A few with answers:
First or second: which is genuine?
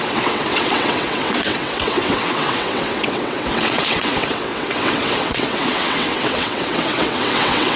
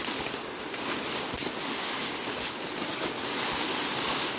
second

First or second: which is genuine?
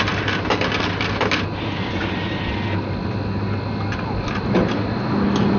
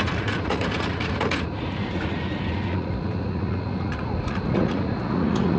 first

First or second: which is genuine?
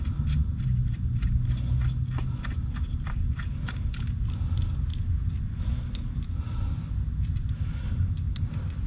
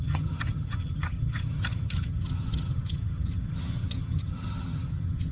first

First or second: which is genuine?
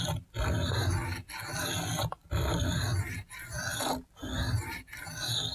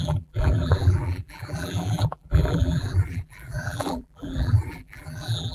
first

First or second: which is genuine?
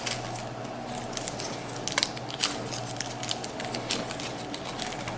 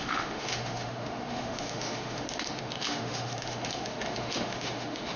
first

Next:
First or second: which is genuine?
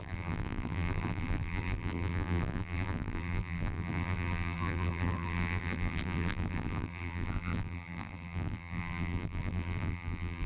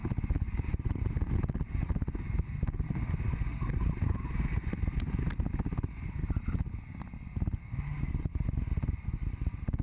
second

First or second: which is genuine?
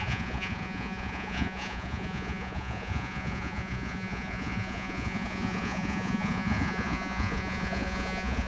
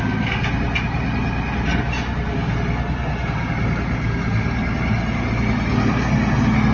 second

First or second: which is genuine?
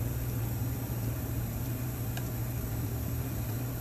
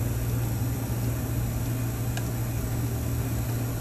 second